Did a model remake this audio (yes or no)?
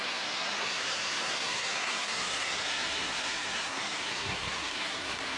yes